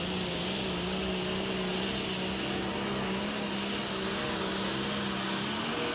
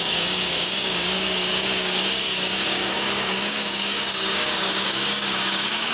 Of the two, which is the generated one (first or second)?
second